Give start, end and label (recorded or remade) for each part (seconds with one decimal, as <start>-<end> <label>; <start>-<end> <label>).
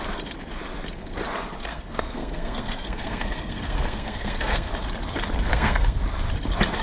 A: 0.0-1.7 recorded; 1.7-4.7 remade; 4.7-5.5 recorded; 5.5-6.0 remade; 6.0-6.8 recorded